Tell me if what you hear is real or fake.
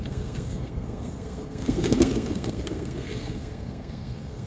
fake